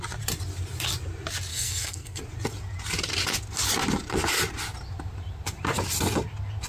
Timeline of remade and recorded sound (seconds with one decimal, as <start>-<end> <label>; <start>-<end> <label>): 0.0-1.5 recorded; 1.5-2.2 remade; 2.2-6.7 recorded